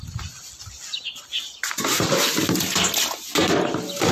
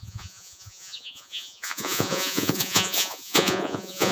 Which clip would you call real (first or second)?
first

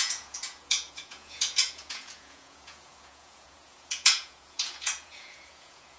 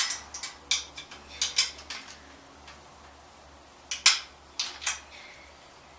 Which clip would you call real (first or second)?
second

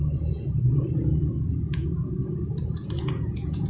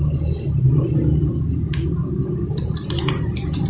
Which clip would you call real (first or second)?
second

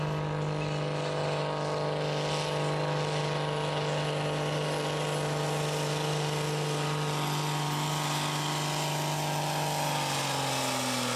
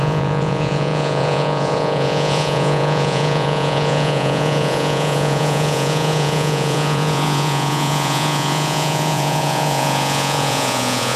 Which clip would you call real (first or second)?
first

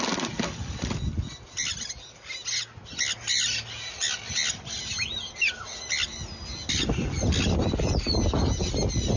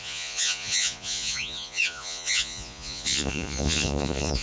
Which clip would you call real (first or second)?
first